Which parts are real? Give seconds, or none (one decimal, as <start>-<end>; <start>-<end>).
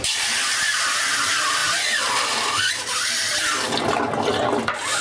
1.6-2.7; 3.3-4.4